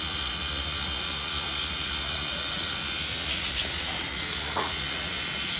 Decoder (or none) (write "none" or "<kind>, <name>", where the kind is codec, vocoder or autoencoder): vocoder, Vocos